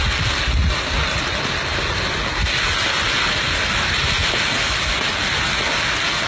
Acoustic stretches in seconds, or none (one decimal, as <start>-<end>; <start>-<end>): 0.0-6.3